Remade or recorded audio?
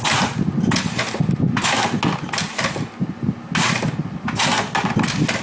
recorded